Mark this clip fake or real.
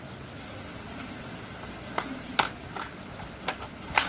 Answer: real